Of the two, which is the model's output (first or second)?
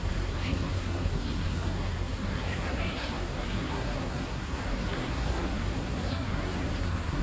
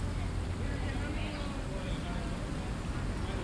first